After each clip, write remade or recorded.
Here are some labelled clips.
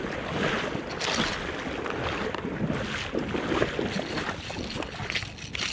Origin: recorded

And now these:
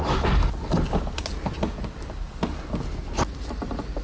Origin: recorded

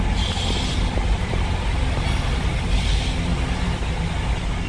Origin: recorded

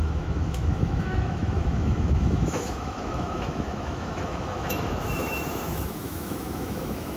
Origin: remade